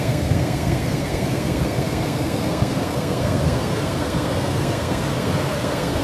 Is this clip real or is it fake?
fake